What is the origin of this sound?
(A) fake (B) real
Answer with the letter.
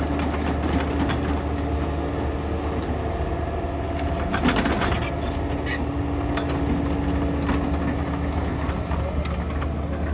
B